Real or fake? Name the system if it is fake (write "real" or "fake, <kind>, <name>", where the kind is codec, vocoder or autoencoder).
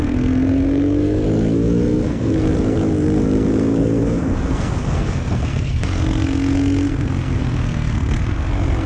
fake, codec, SNAC